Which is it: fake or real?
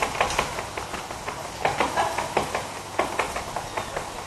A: real